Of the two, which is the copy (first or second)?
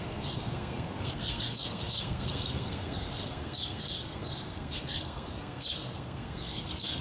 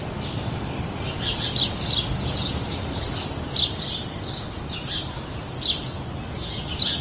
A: first